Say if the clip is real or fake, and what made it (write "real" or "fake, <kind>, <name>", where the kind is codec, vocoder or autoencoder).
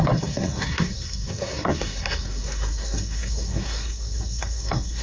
fake, codec, SNAC